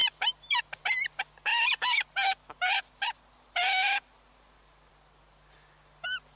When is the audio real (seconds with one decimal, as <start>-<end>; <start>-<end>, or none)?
0.0-1.5; 4.9-6.4

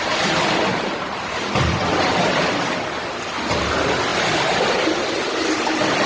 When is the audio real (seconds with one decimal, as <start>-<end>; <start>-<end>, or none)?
0.0-0.7; 1.3-4.1; 4.8-6.1

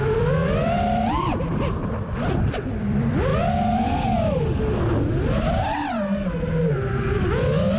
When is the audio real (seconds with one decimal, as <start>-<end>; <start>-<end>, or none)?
3.3-7.8

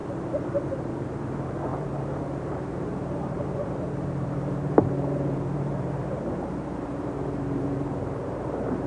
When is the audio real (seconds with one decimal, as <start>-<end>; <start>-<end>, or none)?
0.0-0.7

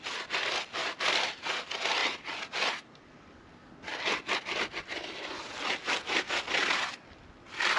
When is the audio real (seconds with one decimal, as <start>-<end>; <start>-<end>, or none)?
0.0-0.8; 1.5-7.8

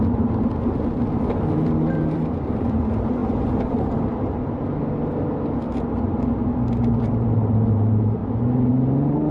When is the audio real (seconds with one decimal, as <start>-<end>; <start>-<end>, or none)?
0.5-1.5; 3.2-6.7; 8.2-8.7

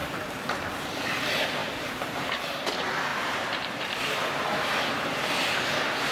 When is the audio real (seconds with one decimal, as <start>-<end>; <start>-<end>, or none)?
0.7-1.6; 2.7-3.1; 4.0-6.1